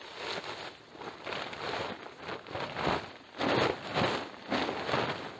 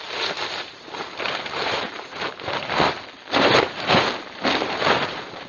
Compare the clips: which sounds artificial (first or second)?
second